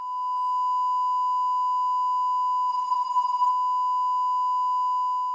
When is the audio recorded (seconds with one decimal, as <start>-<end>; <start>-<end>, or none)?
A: 0.0-2.7; 3.5-5.3